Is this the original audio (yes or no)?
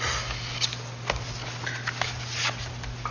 yes